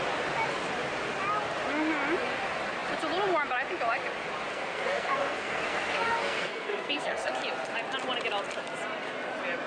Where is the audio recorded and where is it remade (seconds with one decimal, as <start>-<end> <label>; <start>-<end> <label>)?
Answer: 0.0-4.5 recorded; 4.5-7.3 remade; 7.3-9.7 recorded